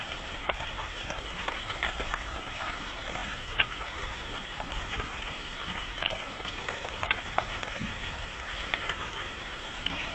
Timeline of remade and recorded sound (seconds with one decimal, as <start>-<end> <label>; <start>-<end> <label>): 0.0-10.1 remade